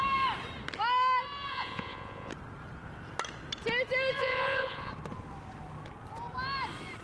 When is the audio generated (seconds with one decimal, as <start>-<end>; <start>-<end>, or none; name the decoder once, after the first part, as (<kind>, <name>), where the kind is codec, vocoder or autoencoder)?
1.5-2.3 (vocoder, Vocos); 4.2-4.9